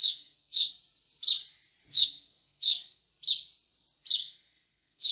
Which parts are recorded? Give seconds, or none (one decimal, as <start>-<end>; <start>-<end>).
0.7-1.8; 3.0-4.2

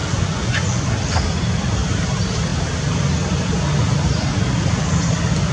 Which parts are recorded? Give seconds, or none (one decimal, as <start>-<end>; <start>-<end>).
0.9-5.5

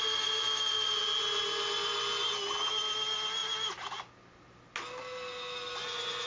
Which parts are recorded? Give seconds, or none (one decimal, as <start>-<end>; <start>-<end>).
0.0-6.3

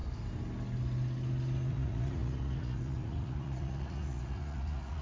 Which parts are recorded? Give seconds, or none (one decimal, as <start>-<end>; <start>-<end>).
0.0-1.7

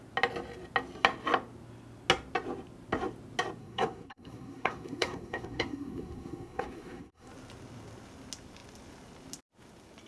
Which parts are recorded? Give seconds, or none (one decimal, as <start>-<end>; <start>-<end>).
0.0-3.6; 7.3-10.1

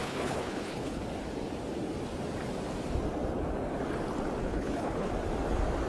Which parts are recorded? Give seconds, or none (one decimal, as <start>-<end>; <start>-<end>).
1.0-4.4; 5.1-5.9

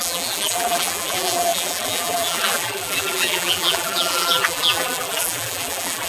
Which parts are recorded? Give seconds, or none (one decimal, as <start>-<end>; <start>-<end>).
none